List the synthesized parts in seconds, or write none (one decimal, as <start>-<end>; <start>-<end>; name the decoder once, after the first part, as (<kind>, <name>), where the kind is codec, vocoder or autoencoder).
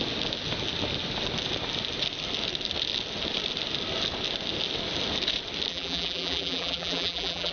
5.7-7.5 (vocoder, BigVGAN v2)